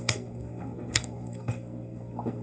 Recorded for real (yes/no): no